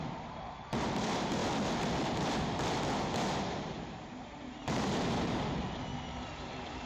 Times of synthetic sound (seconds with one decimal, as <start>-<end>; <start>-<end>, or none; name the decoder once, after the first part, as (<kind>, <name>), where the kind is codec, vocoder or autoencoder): 0.0-1.4 (vocoder, BigVGAN v2); 3.4-5.9; 6.4-6.9